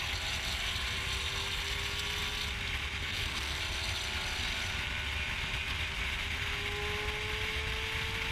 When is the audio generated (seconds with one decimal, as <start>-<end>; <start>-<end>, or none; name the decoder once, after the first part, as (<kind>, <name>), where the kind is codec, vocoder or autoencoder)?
3.0-3.6 (codec, SNAC)